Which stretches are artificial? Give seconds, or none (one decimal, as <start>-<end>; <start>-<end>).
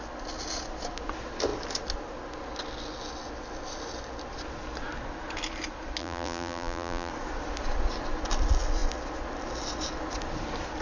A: 6.0-7.1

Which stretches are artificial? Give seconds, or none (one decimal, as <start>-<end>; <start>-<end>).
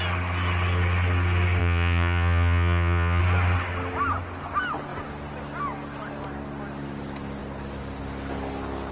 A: 1.6-3.2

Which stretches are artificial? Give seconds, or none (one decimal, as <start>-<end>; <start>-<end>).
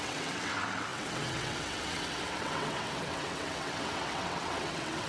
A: 0.0-5.1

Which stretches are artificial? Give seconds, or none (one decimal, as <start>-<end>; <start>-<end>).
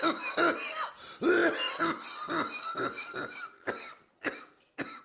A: none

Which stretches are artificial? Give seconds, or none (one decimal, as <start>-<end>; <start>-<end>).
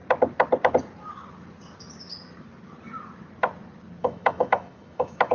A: 4.0-5.3